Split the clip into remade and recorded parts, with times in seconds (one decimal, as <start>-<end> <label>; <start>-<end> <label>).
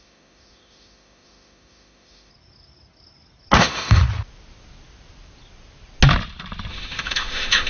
0.0-2.3 remade; 2.3-3.6 recorded; 3.6-4.0 remade; 4.0-6.7 recorded; 6.7-7.7 remade